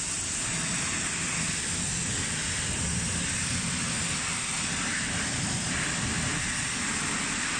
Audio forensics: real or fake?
real